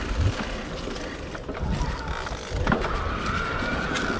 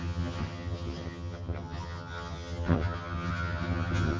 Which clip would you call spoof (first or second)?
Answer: second